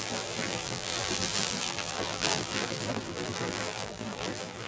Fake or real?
fake